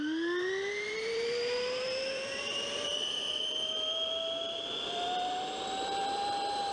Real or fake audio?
fake